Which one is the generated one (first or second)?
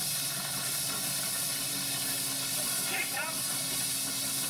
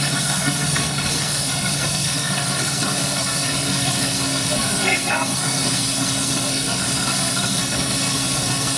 second